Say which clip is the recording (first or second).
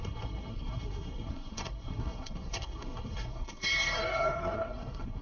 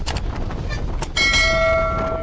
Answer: second